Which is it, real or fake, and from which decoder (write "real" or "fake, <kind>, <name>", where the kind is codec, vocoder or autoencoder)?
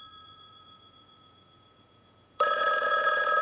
fake, vocoder, Vocos